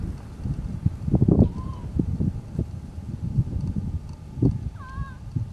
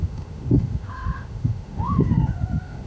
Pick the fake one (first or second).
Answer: second